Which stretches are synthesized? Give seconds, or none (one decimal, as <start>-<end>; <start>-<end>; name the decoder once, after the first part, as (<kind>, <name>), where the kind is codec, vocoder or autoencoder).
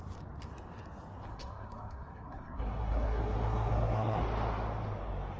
1.3-4.2 (codec, SNAC)